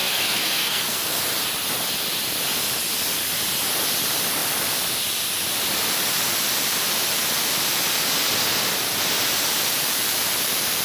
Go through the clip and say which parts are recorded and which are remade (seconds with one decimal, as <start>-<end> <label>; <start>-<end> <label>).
0.0-1.2 remade; 1.2-10.8 recorded